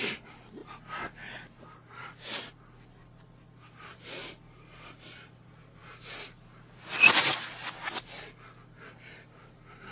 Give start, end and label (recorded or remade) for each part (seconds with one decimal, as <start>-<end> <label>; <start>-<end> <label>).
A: 0.0-9.9 recorded